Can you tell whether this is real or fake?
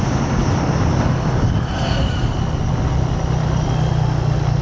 real